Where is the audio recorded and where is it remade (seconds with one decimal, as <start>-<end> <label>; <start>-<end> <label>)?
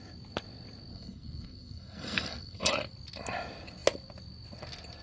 0.0-0.9 recorded; 0.9-2.7 remade; 2.7-5.0 recorded